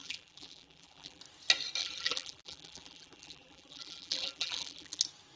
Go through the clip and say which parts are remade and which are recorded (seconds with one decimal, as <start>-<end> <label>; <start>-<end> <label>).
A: 0.0-1.2 remade; 1.2-1.8 recorded; 1.8-5.0 remade; 5.0-5.4 recorded